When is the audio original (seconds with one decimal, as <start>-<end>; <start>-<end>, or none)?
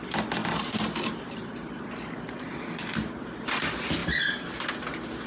0.0-5.3